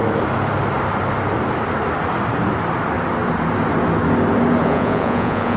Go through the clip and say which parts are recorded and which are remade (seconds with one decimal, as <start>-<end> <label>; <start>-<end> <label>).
0.0-4.6 recorded; 4.6-5.6 remade